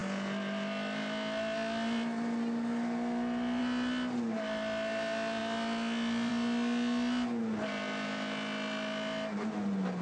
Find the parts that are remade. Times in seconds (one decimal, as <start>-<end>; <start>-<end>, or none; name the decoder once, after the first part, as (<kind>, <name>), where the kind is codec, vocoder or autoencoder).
none